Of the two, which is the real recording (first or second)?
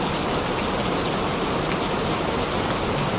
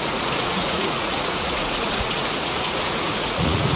first